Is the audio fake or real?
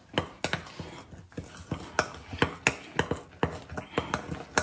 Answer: real